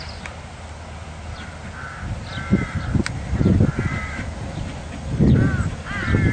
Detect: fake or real real